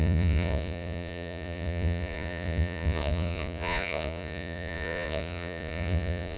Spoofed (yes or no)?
yes